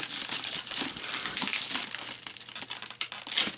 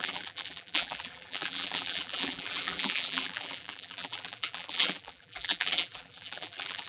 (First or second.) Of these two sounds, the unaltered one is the first